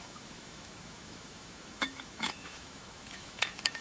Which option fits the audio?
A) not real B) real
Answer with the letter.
A